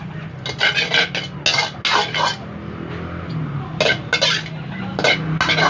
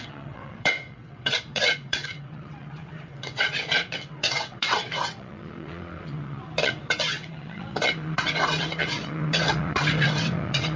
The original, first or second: first